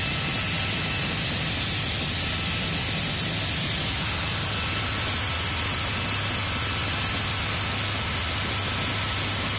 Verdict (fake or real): real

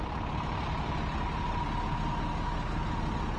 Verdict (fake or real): real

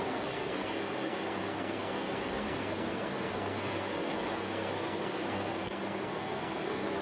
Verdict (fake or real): fake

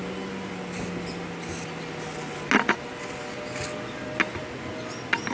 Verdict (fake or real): real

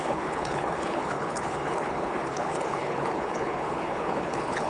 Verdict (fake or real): fake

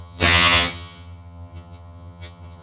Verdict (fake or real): fake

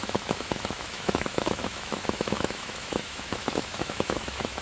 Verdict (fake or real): fake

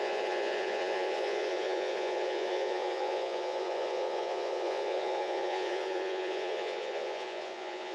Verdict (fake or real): fake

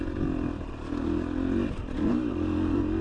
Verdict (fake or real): real